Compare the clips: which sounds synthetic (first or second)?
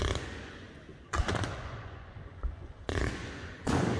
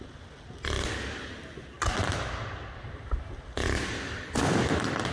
first